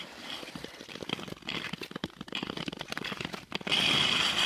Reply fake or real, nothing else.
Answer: fake